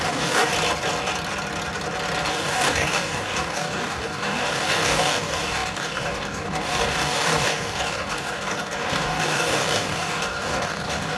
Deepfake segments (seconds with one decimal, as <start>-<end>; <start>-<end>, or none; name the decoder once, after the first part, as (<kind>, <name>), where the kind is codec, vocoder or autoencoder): 0.0-0.5 (codec, DAC); 2.3-11.2